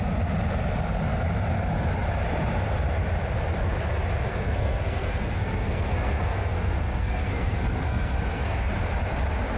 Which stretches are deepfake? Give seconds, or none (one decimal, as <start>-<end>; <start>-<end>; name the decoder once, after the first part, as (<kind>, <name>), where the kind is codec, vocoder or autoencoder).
4.3-8.7 (codec, SNAC)